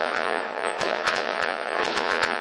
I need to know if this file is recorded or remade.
remade